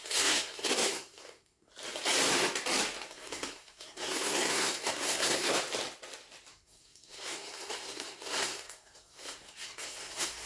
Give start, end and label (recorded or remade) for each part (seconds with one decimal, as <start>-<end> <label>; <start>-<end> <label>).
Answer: 0.0-1.7 remade; 1.7-3.1 recorded; 3.1-5.6 remade; 5.6-6.5 recorded; 6.5-10.5 remade